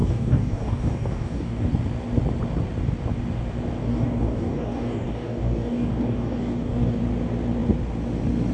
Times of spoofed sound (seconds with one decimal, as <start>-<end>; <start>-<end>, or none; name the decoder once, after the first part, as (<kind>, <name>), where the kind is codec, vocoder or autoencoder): 0.0-1.7 (codec, DAC); 3.8-7.0

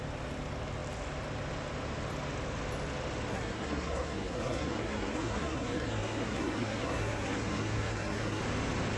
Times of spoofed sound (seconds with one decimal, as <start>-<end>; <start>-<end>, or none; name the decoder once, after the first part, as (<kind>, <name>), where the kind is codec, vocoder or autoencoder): 3.3-8.4 (codec, SNAC)

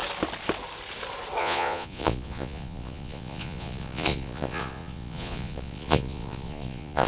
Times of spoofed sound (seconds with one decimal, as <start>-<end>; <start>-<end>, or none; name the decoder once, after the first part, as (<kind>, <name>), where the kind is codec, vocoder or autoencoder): 1.4-7.1 (vocoder, Vocos)

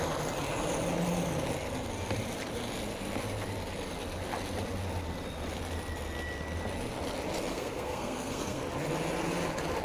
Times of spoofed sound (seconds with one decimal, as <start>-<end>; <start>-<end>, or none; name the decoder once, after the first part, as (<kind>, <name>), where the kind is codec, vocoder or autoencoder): 7.5-8.6 (codec, SNAC)

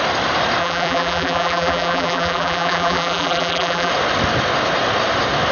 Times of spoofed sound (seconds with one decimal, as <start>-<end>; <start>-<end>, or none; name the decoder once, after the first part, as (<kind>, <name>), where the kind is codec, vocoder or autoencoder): 0.6-3.9 (vocoder, BigVGAN v2)

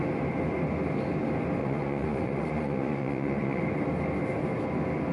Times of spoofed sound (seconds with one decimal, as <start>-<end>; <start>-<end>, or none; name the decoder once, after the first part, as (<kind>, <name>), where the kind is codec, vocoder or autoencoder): 1.6-3.6 (vocoder, Vocos)

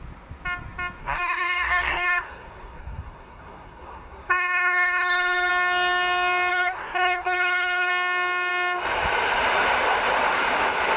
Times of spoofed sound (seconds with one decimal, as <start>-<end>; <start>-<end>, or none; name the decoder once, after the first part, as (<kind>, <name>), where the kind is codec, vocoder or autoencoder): 1.0-5.5 (codec, SNAC); 6.5-7.9

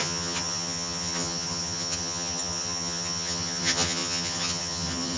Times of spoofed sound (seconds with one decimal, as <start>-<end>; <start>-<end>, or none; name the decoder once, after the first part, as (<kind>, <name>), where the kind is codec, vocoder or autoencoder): 0.0-5.2 (vocoder, HiFi-GAN)